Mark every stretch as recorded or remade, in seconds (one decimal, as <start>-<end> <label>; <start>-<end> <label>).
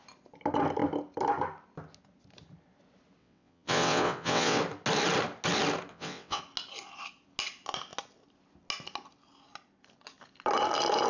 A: 0.0-3.2 recorded; 3.2-4.6 remade; 4.6-5.9 recorded; 5.9-6.4 remade; 6.4-11.1 recorded